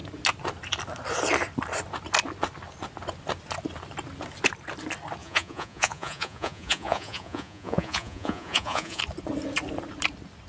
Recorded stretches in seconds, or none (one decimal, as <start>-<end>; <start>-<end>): 0.0-5.2; 9.0-10.5